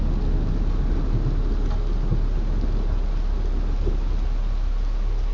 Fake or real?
real